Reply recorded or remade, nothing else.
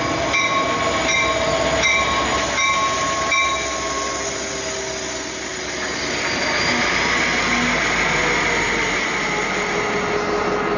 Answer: recorded